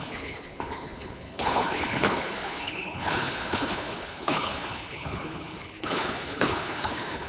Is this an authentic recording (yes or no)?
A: no